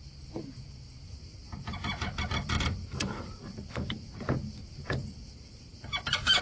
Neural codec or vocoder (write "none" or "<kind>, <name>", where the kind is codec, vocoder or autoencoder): vocoder, BigVGAN v2